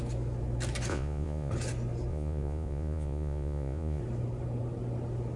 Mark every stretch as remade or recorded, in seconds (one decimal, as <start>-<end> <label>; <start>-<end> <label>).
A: 0.0-0.9 recorded; 0.9-1.5 remade; 1.5-2.1 recorded; 2.1-4.0 remade; 4.0-5.4 recorded